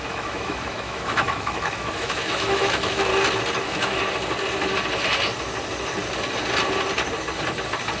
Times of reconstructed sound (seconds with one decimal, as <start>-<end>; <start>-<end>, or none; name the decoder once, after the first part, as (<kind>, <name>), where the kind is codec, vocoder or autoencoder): 0.0-3.1 (autoencoder, DAC-VAE); 3.6-4.0